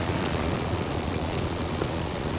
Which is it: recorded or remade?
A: remade